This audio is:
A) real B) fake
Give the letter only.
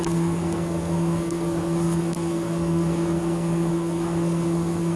B